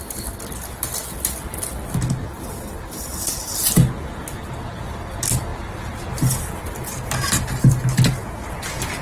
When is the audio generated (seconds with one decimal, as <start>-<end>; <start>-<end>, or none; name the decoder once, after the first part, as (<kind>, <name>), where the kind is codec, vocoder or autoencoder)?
none